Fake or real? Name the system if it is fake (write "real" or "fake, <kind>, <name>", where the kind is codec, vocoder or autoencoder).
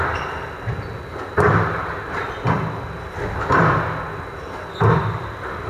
real